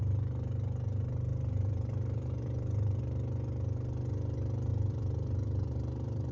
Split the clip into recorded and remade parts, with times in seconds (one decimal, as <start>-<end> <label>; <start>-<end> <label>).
0.0-1.3 recorded; 1.3-3.0 remade; 3.0-4.7 recorded; 4.7-6.3 remade